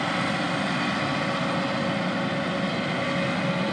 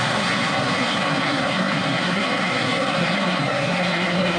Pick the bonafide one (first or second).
first